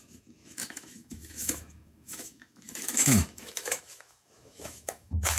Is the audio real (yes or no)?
no